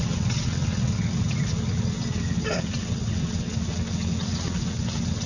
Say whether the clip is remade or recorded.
remade